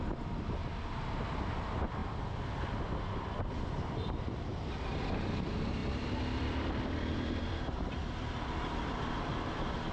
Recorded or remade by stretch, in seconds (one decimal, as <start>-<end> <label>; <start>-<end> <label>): 0.0-0.6 remade; 0.6-1.6 recorded; 1.6-2.0 remade; 2.0-3.6 recorded; 3.6-9.9 remade